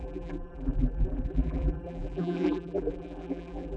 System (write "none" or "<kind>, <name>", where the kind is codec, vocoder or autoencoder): vocoder, BigVGAN v2